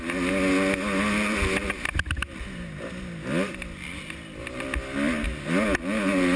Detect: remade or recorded recorded